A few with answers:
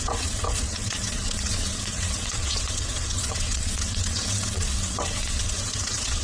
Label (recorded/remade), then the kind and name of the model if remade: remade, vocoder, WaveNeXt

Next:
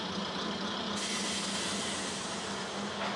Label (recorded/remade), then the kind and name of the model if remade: recorded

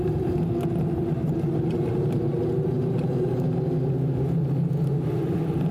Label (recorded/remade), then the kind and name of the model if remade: recorded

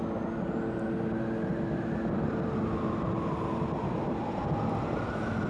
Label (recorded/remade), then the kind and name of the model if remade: recorded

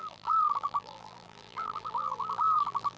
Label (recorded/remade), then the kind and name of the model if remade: remade, vocoder, BigVGAN v2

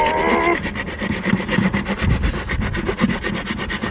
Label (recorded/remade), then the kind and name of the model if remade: recorded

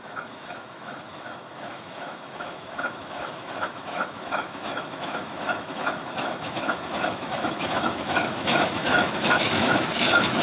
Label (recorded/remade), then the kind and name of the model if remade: remade, autoencoder, DAC-VAE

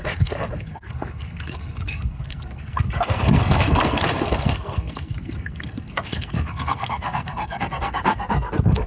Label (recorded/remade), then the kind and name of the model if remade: remade, codec, SNAC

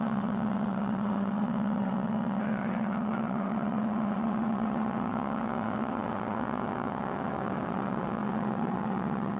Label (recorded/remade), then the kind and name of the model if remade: remade, vocoder, WaveNeXt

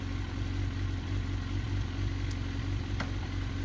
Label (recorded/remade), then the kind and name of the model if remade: recorded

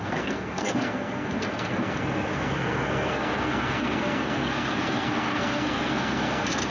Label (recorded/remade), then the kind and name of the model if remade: remade, codec, SNAC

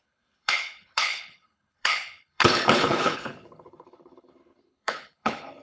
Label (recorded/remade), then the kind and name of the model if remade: remade, codec, HILCodec